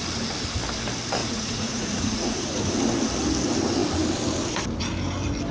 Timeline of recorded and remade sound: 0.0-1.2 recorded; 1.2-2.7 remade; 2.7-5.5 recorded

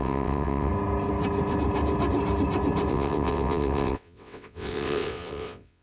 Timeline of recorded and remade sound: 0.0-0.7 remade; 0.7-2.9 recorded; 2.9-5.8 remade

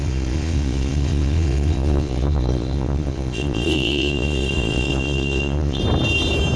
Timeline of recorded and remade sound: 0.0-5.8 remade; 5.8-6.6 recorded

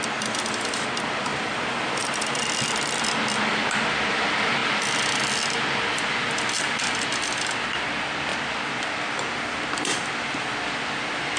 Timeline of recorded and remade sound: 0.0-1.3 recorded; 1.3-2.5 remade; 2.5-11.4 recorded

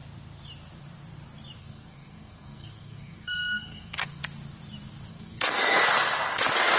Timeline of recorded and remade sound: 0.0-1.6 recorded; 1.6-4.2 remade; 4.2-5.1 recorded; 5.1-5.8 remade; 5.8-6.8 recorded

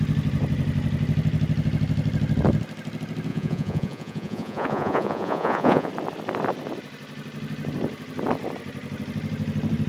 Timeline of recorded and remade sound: 0.0-3.3 recorded; 3.3-5.9 remade; 5.9-9.9 recorded